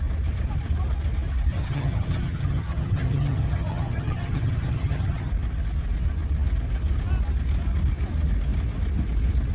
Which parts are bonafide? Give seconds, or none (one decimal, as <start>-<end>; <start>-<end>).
0.0-1.5; 5.3-9.5